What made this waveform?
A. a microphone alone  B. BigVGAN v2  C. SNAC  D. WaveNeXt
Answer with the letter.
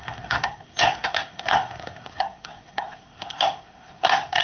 C